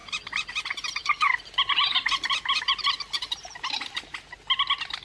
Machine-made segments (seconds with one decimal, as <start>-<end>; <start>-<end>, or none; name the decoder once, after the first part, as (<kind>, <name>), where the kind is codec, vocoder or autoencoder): 0.0-0.5 (vocoder, BigVGAN v2); 1.0-4.0